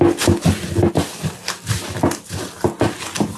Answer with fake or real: real